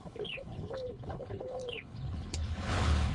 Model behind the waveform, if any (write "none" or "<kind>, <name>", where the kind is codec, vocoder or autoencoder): codec, HILCodec